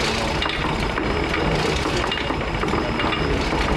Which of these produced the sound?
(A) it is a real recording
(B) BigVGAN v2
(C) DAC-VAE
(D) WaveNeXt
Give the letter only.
A